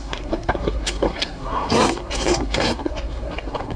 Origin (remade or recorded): remade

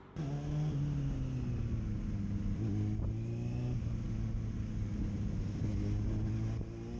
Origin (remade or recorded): recorded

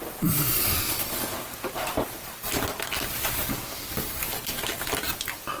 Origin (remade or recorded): recorded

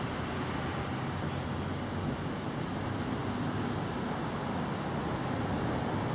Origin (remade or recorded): recorded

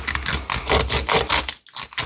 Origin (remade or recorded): recorded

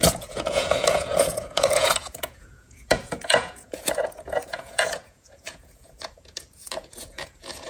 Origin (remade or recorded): remade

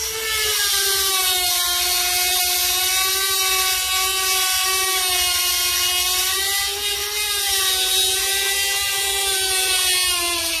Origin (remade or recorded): recorded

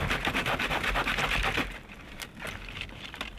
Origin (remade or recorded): recorded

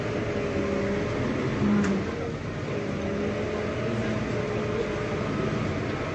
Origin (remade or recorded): recorded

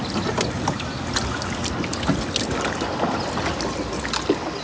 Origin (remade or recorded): recorded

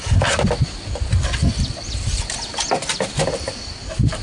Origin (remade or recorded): recorded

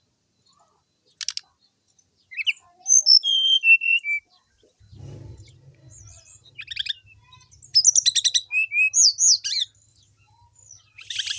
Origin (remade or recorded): recorded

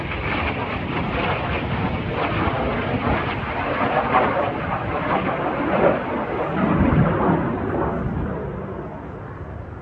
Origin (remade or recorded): recorded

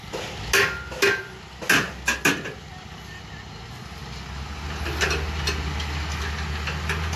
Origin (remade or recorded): recorded